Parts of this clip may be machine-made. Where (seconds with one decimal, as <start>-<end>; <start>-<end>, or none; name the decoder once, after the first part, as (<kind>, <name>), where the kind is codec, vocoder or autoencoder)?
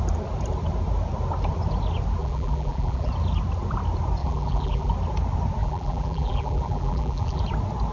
2.2-3.1 (vocoder, BigVGAN v2); 4.2-4.9; 5.6-7.4